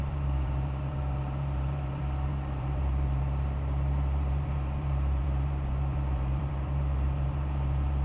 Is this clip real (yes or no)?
no